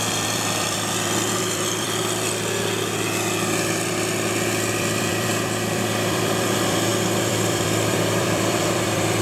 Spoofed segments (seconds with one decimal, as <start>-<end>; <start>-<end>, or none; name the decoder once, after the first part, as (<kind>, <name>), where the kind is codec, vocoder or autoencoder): 0.0-2.0 (vocoder, BigVGAN v2); 4.7-9.2